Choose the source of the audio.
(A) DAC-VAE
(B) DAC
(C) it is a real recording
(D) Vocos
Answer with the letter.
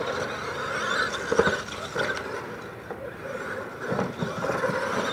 C